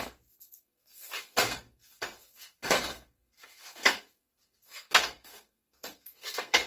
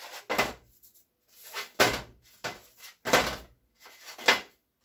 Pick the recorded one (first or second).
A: second